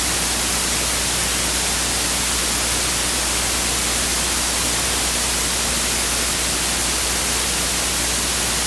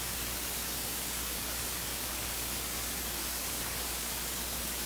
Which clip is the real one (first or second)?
first